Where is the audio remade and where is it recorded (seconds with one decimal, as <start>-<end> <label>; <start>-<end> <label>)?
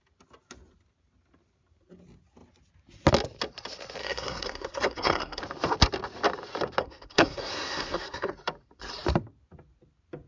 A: 0.0-4.0 recorded; 4.0-5.4 remade; 5.4-6.8 recorded; 6.8-8.3 remade; 8.3-10.3 recorded